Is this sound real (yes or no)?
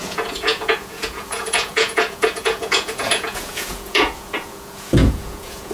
no